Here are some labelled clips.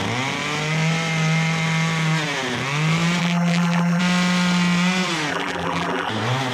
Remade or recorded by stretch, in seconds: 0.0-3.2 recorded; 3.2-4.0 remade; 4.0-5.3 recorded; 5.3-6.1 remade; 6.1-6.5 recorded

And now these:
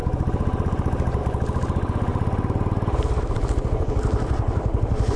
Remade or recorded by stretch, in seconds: 0.0-1.2 remade; 1.2-2.1 recorded; 2.1-5.2 remade

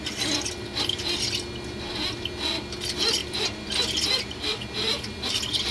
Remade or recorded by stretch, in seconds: 0.0-3.2 recorded; 3.2-3.8 remade; 3.8-5.7 recorded

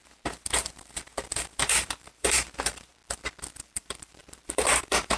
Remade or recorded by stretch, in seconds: 0.0-3.0 remade; 3.0-3.6 recorded; 3.6-5.2 remade

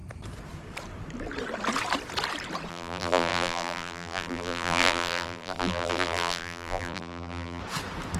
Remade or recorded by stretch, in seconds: 0.0-2.7 recorded; 2.7-7.6 remade; 7.6-8.2 recorded

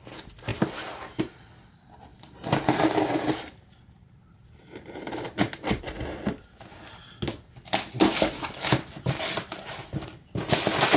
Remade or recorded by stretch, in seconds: 0.0-0.5 recorded; 0.5-1.2 remade; 1.2-2.1 recorded; 2.1-5.8 remade; 5.8-8.1 recorded; 8.1-10.5 remade; 10.5-11.0 recorded

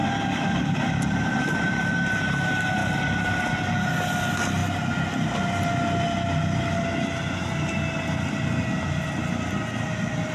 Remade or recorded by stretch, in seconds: 0.0-1.9 remade; 1.9-2.8 recorded; 2.8-3.9 remade; 3.9-10.3 recorded

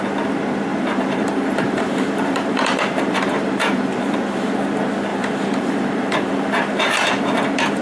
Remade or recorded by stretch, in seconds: 0.0-0.7 recorded; 0.7-4.5 remade; 4.5-5.1 recorded; 5.1-7.8 remade